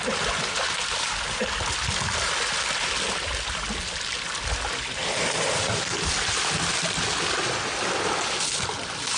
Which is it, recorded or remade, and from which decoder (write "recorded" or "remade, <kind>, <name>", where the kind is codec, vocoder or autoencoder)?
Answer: recorded